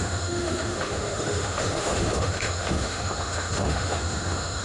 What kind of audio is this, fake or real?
fake